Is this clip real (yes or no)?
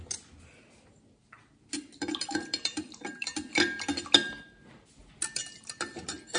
yes